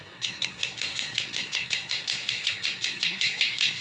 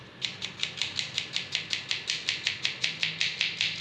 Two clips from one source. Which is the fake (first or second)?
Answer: first